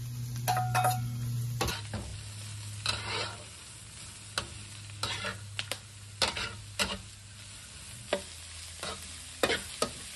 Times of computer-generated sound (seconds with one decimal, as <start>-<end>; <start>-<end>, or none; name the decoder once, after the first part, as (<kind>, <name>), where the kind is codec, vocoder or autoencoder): none